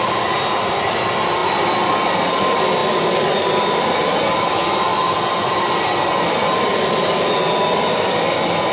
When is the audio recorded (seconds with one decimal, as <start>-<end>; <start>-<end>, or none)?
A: 0.0-4.9; 5.6-8.7